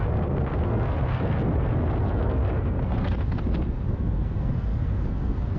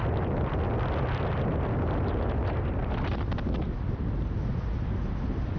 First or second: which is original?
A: second